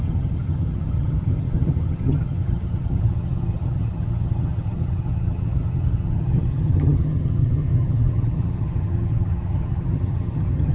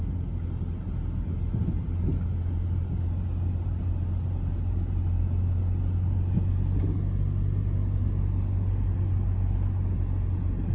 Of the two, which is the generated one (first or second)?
first